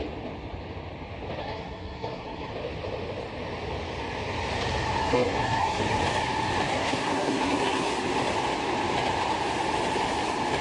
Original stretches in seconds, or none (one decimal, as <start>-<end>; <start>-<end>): 0.0-1.4; 2.5-5.0; 5.8-6.7; 7.9-10.6